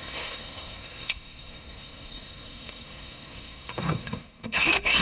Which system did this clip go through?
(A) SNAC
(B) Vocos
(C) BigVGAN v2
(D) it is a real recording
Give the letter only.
A